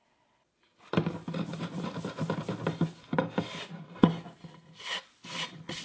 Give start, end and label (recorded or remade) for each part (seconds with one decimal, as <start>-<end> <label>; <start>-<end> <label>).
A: 0.0-5.8 recorded